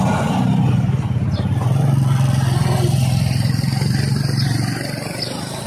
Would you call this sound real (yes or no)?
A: yes